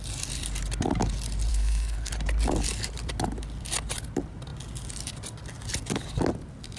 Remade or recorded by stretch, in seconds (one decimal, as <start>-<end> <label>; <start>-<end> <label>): 0.0-1.5 recorded; 1.5-2.1 remade; 2.1-6.8 recorded